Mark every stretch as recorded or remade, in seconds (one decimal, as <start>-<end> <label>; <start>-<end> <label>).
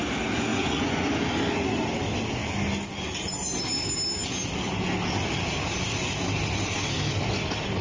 0.0-0.5 recorded; 0.5-1.1 remade; 1.1-7.8 recorded